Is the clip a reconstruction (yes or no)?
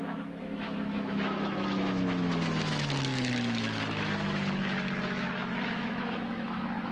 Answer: yes